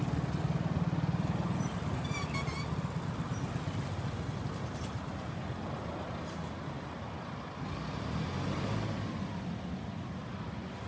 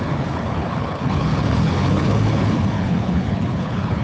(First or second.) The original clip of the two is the first